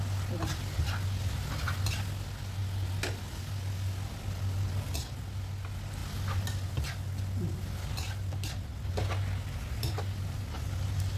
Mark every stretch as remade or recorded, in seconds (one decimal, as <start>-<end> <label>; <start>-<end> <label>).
0.0-11.2 recorded